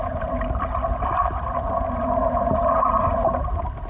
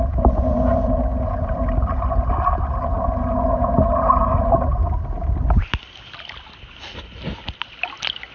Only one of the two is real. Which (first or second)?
second